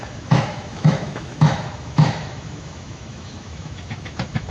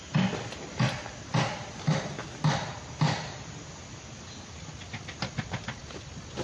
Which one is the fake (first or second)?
first